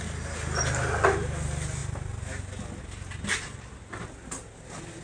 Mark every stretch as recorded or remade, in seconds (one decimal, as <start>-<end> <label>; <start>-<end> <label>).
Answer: 0.0-5.0 recorded

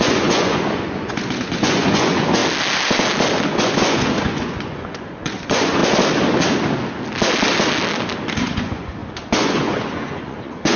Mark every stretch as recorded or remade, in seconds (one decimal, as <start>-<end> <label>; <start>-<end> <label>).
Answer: 0.0-2.4 remade; 2.4-3.5 recorded; 3.5-5.8 remade; 5.8-8.4 recorded; 8.4-10.8 remade

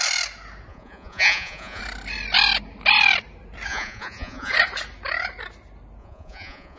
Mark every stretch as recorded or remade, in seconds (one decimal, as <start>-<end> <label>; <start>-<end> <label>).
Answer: 0.0-0.7 recorded; 0.7-1.8 remade; 1.8-3.7 recorded; 3.7-4.5 remade; 4.5-6.0 recorded; 6.0-6.8 remade

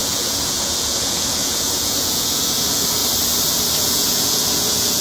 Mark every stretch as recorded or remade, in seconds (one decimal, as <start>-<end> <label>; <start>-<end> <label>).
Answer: 0.0-3.0 remade; 3.0-3.8 recorded; 3.8-5.0 remade

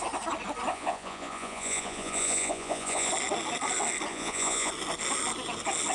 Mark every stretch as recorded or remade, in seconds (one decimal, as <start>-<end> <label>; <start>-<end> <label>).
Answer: 0.0-0.7 recorded; 0.7-3.1 remade; 3.1-4.1 recorded; 4.1-4.7 remade; 4.7-5.9 recorded

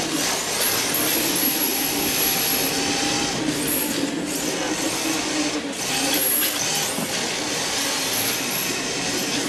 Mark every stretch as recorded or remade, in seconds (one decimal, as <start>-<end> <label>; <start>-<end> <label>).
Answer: 0.0-9.5 recorded

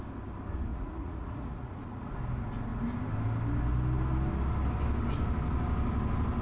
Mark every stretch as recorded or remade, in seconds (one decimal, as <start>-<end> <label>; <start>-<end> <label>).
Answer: 0.0-0.7 recorded; 0.7-2.1 remade; 2.1-6.4 recorded

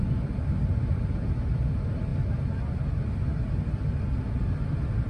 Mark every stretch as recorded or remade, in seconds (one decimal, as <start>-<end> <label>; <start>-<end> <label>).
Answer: 0.0-5.1 recorded